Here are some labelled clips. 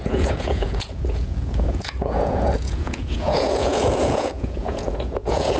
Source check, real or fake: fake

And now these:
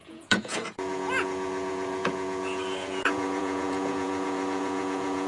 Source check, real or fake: fake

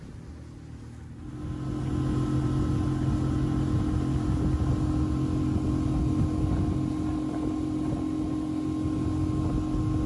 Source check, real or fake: real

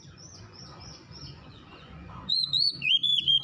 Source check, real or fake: fake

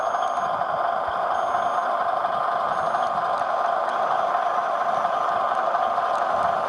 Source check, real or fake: real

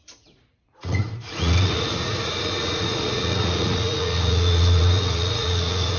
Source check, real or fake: fake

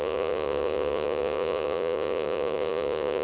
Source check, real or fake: fake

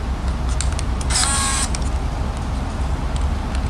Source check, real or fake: real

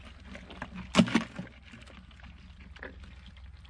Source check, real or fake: real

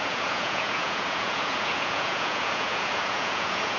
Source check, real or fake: fake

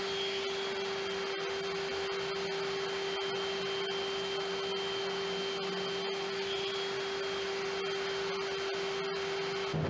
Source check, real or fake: real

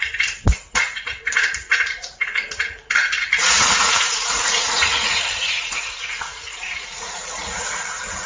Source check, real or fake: fake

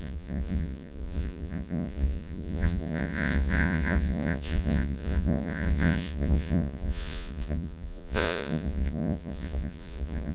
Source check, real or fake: fake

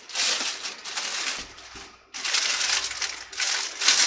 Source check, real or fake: real